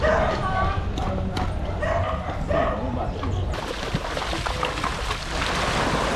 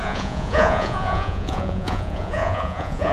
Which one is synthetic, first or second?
second